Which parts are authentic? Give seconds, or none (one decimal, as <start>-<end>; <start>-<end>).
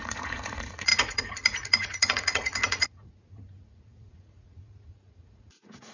none